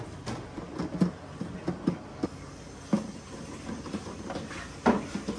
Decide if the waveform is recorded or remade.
recorded